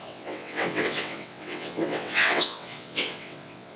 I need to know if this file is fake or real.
fake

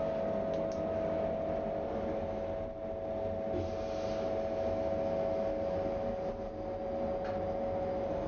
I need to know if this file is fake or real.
real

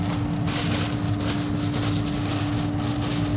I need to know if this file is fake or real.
real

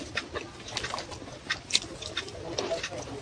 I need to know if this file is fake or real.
real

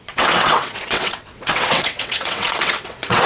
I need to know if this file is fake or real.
fake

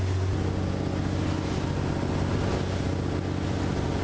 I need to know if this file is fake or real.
real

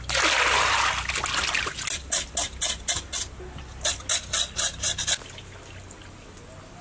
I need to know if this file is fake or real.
real